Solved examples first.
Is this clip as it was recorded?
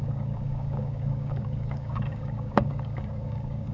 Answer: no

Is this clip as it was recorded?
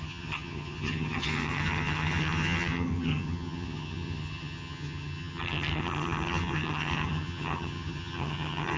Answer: no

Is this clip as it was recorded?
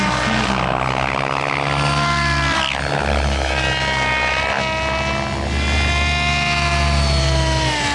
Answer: yes